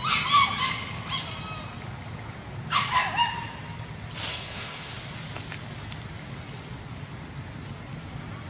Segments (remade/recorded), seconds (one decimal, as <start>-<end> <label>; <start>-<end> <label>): 0.0-4.3 recorded; 4.3-4.9 remade; 4.9-8.5 recorded